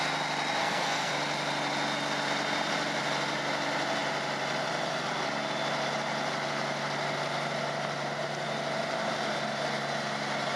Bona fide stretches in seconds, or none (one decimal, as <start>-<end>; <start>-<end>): 0.0-0.6; 1.1-10.6